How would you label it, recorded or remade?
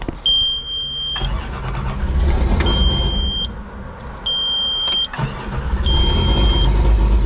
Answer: recorded